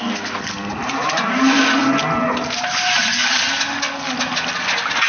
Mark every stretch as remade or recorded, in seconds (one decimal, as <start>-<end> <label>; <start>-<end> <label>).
0.0-0.8 recorded; 0.8-1.6 remade; 1.6-5.1 recorded